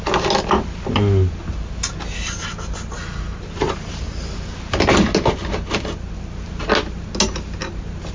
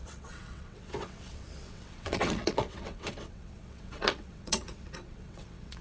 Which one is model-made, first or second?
second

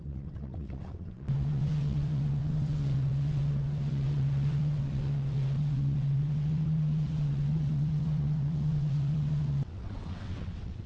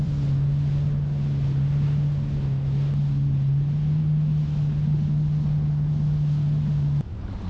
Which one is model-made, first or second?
first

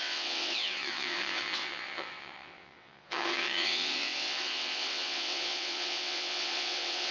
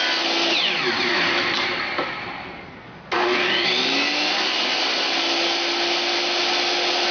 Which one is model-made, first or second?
first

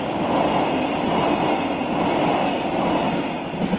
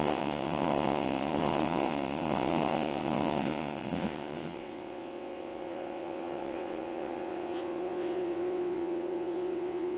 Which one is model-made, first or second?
second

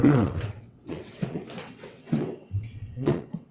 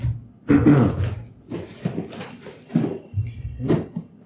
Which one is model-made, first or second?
first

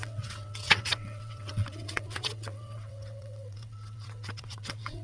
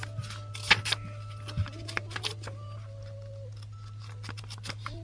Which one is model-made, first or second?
first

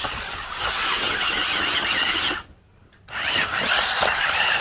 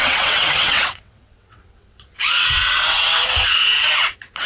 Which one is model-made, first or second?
second